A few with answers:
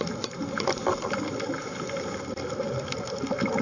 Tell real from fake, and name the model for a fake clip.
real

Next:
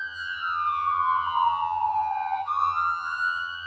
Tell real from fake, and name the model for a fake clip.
fake, vocoder, HiFi-GAN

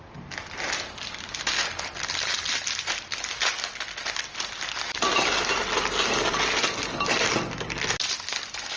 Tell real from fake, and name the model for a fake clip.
real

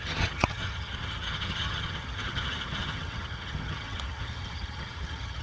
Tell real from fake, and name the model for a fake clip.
fake, vocoder, HiFi-GAN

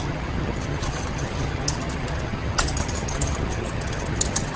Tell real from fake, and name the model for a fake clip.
fake, vocoder, HiFi-GAN